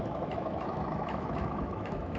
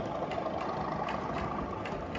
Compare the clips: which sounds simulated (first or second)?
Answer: first